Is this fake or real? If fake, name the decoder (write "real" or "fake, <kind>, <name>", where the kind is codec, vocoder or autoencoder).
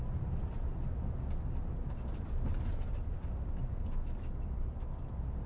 real